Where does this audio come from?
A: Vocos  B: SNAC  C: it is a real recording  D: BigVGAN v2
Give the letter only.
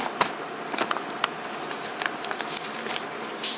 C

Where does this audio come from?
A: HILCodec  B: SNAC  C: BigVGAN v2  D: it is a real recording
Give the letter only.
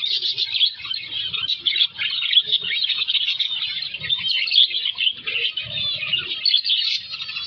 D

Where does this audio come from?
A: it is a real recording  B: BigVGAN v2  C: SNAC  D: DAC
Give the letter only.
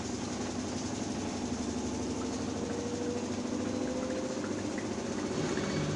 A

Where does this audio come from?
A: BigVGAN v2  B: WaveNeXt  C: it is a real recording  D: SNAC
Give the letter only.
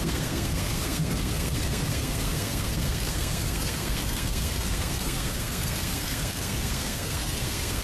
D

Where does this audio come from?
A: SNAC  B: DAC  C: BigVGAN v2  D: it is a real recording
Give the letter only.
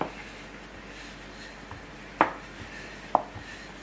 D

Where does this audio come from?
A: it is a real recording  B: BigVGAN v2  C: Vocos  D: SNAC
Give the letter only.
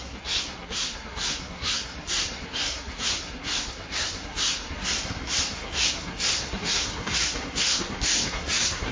D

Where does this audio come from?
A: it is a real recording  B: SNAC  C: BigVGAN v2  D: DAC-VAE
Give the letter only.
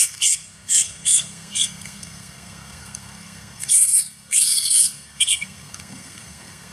B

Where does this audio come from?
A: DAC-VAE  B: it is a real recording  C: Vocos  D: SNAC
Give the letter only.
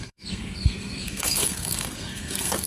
D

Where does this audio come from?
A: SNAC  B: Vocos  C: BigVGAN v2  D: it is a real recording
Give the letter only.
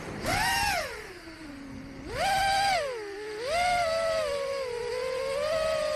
D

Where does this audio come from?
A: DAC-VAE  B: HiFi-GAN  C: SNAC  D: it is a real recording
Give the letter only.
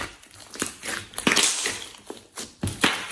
D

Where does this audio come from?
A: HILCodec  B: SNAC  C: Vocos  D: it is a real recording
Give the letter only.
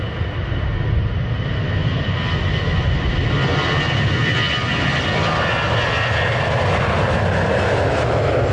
D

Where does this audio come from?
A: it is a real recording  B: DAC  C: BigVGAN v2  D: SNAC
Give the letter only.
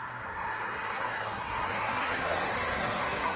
D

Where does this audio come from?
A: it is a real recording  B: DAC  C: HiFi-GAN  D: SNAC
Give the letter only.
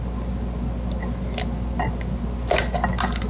A